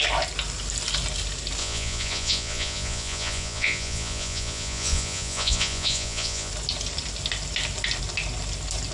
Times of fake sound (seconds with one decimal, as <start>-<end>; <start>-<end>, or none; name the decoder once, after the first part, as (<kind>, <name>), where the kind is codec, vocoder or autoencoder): 1.6-6.5 (vocoder, Vocos)